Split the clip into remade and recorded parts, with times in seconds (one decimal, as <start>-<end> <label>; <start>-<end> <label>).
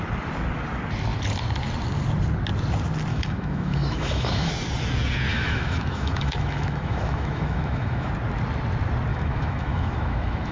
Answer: 0.0-3.1 recorded; 3.1-4.5 remade; 4.5-5.3 recorded; 5.3-8.1 remade; 8.1-9.1 recorded; 9.1-10.5 remade